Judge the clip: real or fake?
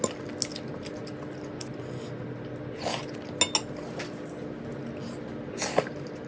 real